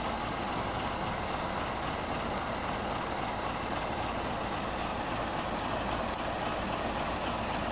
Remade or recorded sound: recorded